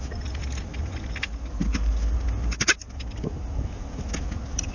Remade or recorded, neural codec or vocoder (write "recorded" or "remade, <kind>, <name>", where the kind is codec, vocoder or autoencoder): recorded